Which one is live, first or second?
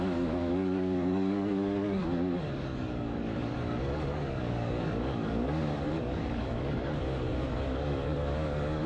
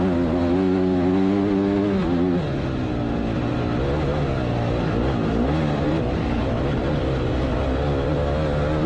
second